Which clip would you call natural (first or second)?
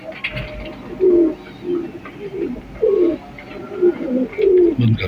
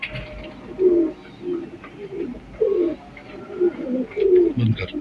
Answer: first